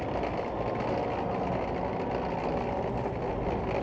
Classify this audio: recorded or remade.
recorded